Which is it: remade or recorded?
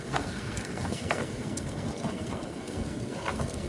remade